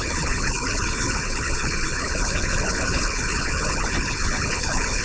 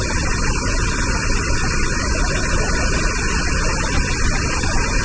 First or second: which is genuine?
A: second